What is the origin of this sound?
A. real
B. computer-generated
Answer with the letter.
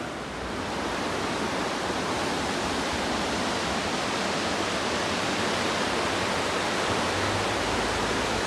A